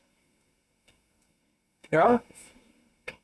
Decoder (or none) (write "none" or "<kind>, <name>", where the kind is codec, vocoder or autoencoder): codec, SNAC